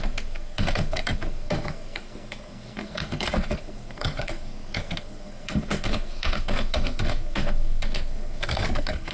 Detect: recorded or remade remade